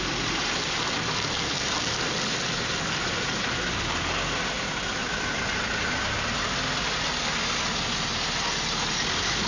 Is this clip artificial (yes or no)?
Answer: no